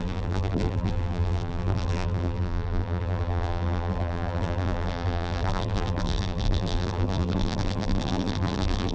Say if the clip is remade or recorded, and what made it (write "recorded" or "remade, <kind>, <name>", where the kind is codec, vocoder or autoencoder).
remade, vocoder, BigVGAN v2